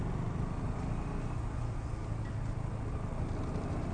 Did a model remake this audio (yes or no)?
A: no